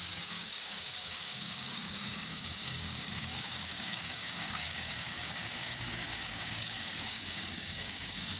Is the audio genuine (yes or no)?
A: no